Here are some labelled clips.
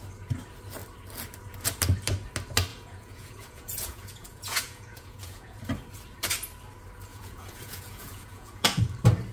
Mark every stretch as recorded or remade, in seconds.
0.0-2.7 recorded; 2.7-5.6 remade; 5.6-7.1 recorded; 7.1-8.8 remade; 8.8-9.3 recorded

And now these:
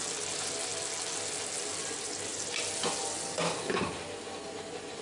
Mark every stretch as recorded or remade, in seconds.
0.0-5.0 recorded